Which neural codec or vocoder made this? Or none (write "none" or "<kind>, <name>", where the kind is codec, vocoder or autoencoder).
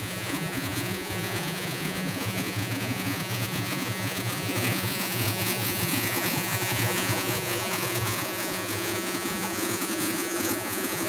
vocoder, Vocos